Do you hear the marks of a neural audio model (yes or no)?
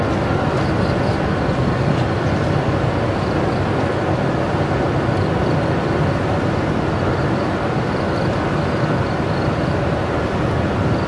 no